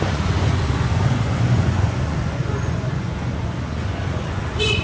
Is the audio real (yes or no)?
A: no